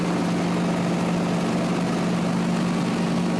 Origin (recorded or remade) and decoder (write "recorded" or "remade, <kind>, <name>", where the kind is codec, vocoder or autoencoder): recorded